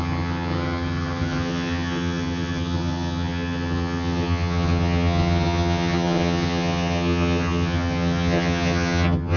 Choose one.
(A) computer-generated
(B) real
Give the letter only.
A